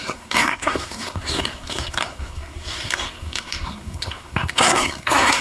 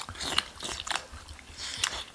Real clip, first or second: second